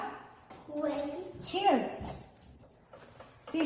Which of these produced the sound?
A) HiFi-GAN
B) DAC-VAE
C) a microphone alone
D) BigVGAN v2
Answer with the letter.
C